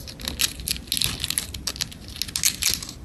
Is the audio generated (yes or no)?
no